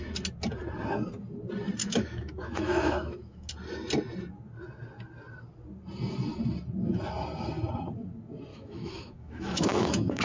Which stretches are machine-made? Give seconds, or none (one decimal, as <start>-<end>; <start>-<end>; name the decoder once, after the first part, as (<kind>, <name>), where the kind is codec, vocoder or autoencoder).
1.8-3.5 (autoencoder, DAC-VAE); 8.5-10.2